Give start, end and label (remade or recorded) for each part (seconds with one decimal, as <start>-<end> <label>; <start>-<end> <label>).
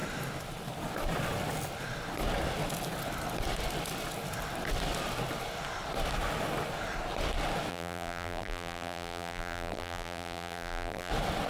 0.0-7.7 recorded; 7.7-11.1 remade; 11.1-11.5 recorded